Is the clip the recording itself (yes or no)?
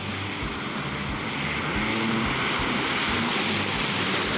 yes